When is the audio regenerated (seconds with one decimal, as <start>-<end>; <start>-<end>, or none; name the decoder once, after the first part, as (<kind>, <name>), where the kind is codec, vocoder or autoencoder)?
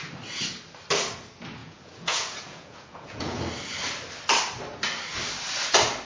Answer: 1.6-3.4 (vocoder, Vocos)